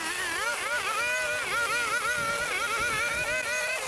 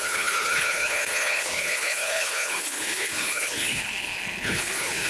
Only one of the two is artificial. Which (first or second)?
second